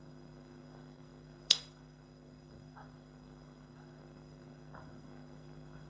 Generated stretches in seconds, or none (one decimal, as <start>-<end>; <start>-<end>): 0.0-5.9